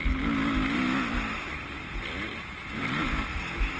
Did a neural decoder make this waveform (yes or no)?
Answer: no